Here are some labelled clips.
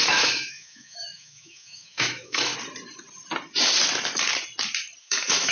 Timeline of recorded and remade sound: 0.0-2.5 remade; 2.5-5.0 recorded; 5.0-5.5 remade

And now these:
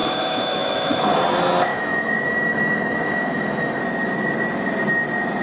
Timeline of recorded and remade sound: 0.0-1.1 remade; 1.1-1.7 recorded; 1.7-3.8 remade; 3.8-5.4 recorded

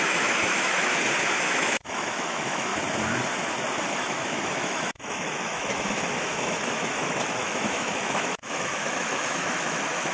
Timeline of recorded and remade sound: 0.0-0.9 remade; 0.9-1.4 recorded; 1.4-2.7 remade; 2.7-3.8 recorded; 3.8-10.1 remade

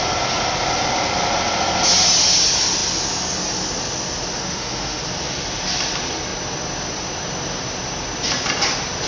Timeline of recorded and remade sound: 0.0-4.4 recorded; 4.4-5.0 remade; 5.0-9.1 recorded

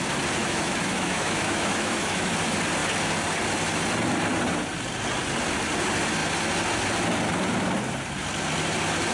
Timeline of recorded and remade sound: 0.0-0.4 recorded; 0.4-2.3 remade; 2.3-9.1 recorded